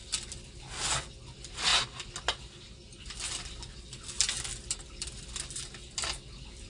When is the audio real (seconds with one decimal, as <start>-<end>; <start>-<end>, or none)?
0.0-6.7